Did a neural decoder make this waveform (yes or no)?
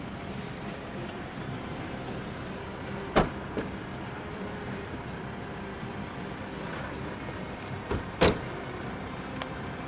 yes